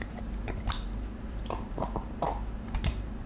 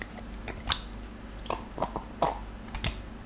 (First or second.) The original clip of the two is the second